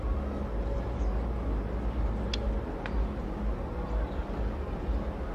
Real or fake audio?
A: real